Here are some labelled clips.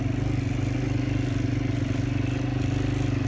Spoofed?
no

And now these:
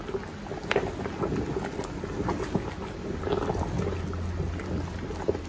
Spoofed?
no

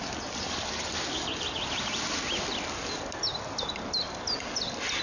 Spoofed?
no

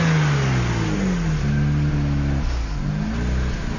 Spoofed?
no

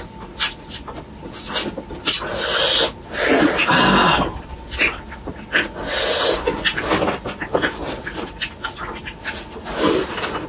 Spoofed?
no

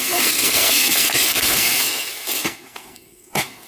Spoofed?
yes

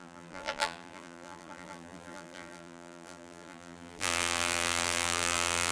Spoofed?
yes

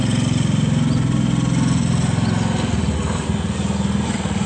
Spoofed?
no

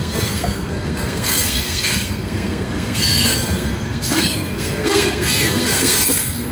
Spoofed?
yes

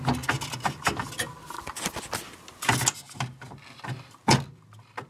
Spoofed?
no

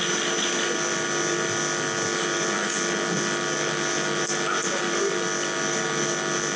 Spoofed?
no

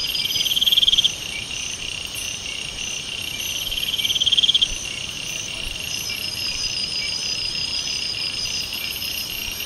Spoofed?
yes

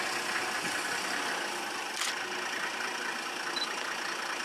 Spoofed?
no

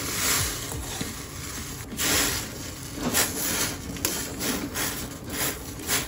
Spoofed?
no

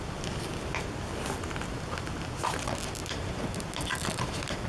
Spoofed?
no